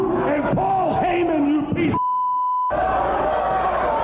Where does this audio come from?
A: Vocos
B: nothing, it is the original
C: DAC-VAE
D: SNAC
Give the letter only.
B